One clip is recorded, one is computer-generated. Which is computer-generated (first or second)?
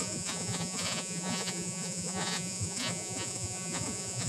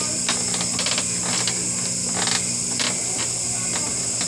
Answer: first